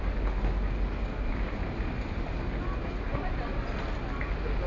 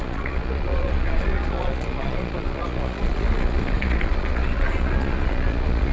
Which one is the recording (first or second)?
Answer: first